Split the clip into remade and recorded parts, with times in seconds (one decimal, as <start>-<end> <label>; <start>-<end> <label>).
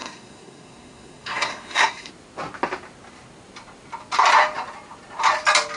0.0-2.1 remade; 2.1-5.8 recorded